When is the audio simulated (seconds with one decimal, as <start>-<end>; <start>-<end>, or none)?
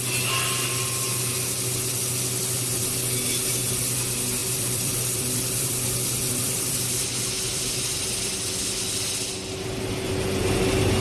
4.4-6.8; 7.5-8.3